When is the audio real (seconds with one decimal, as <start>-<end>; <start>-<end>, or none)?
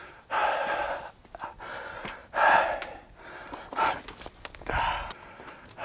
0.0-5.8